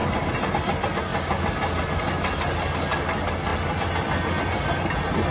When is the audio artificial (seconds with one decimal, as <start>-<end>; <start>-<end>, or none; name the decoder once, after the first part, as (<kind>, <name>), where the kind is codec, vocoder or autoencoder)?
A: none